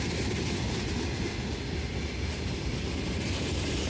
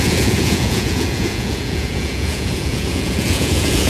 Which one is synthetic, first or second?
second